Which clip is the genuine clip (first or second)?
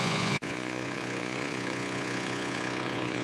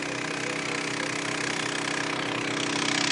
second